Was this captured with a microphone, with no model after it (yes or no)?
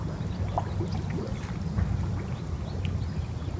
yes